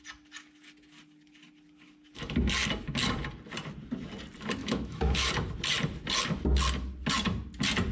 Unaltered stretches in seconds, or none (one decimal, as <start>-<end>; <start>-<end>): 0.0-4.6; 5.3-7.9